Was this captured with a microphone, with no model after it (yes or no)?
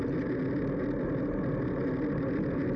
yes